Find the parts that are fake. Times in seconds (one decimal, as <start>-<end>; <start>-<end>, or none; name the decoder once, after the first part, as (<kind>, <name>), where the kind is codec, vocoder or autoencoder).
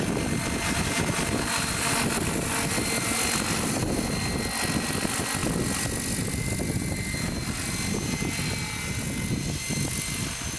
none